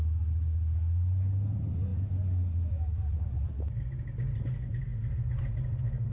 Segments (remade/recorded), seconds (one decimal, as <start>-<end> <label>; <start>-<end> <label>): 0.0-6.1 recorded